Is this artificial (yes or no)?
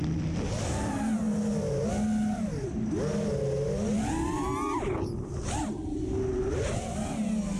no